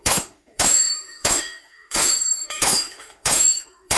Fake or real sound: fake